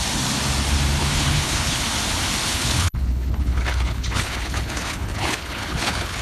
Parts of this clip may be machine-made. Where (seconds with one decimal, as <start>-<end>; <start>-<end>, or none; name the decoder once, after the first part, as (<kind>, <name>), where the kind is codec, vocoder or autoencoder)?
1.0-1.8 (codec, HILCodec); 2.5-6.2